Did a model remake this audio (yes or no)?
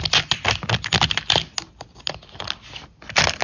no